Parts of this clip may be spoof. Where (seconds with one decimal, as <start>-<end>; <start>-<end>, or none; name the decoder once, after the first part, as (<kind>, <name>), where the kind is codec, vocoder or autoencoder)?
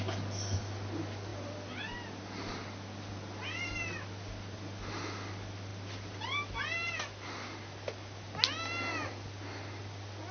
none